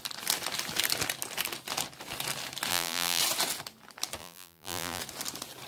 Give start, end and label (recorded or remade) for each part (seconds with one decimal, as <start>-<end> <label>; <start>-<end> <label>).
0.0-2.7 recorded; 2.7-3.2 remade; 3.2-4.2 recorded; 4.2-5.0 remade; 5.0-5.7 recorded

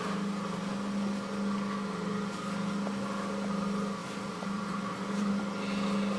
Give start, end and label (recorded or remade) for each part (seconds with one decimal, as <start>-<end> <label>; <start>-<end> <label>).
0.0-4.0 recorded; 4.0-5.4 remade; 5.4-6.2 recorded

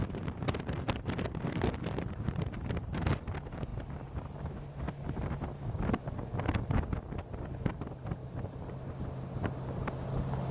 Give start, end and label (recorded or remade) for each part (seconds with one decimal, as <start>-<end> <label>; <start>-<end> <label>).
0.0-3.2 remade; 3.2-8.2 recorded; 8.2-8.9 remade; 8.9-10.5 recorded

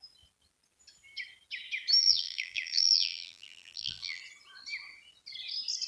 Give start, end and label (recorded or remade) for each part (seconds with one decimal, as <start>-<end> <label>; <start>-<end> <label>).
0.0-2.0 recorded; 2.0-4.2 remade; 4.2-5.9 recorded

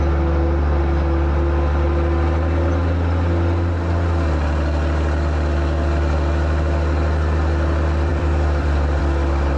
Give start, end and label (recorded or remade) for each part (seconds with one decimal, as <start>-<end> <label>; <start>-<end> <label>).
0.0-8.1 recorded; 8.1-9.0 remade; 9.0-9.6 recorded

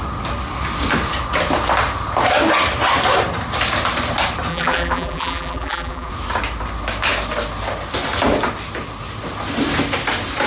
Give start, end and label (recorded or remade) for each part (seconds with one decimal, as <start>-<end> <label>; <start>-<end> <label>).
0.0-4.5 recorded; 4.5-6.1 remade; 6.1-10.5 recorded

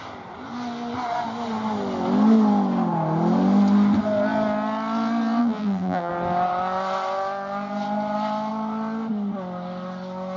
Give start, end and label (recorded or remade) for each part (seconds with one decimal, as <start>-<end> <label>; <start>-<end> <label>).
0.0-5.4 recorded; 5.4-6.1 remade; 6.1-10.4 recorded

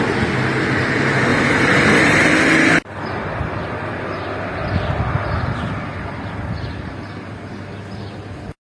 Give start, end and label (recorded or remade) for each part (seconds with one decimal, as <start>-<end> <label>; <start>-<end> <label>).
0.0-1.3 recorded; 1.3-2.3 remade; 2.3-8.6 recorded